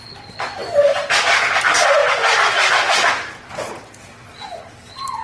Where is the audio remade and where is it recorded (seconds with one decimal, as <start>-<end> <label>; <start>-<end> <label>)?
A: 0.0-5.2 recorded